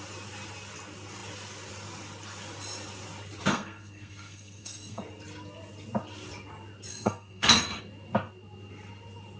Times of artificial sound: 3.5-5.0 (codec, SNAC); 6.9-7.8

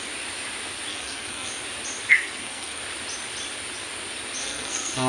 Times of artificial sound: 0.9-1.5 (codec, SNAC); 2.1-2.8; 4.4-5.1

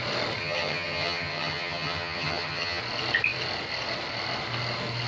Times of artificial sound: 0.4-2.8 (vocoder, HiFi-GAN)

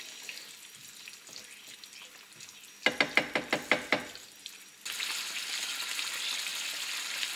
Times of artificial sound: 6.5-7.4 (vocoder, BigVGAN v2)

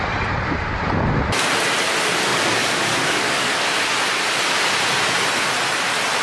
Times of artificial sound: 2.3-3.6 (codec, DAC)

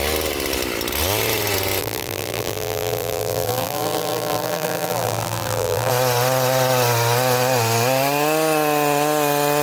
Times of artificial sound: 1.8-5.9 (vocoder, BigVGAN v2)

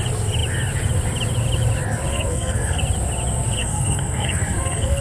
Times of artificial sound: 2.1-2.8 (codec, SNAC); 3.6-5.0

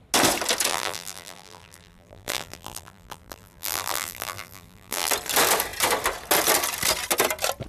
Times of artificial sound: 0.7-5.1 (vocoder, BigVGAN v2)